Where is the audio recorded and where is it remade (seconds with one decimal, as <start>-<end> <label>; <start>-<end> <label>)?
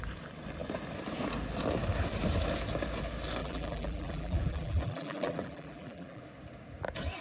0.0-3.4 recorded; 3.4-6.2 remade; 6.2-7.2 recorded